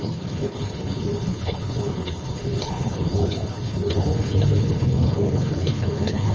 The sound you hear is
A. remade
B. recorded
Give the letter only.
A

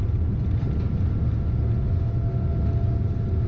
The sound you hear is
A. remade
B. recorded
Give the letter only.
B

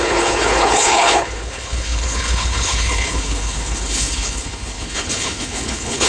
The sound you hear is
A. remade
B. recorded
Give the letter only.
A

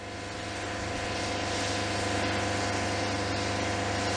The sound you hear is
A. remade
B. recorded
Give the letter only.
B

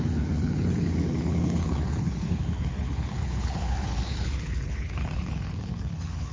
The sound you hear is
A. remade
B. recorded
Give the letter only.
A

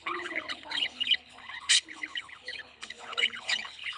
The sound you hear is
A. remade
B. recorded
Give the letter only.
A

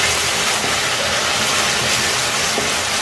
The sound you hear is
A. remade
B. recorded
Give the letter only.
B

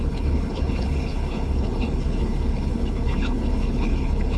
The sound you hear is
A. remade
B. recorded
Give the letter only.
A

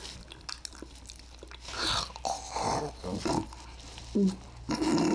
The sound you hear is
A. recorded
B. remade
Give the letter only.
A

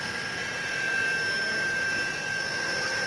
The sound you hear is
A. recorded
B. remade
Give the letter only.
A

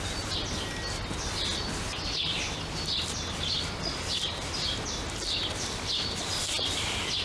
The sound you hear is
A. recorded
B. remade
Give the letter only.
A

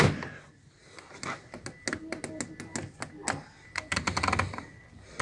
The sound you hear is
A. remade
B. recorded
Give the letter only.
B